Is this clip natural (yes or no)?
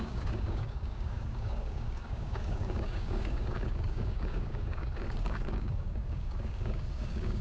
no